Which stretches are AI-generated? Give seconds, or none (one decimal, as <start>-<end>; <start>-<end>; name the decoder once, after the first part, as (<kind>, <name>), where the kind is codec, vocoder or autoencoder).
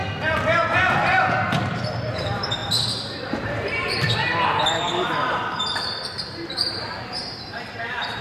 1.6-8.2 (vocoder, BigVGAN v2)